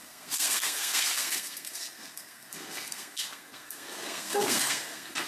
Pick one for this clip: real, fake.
fake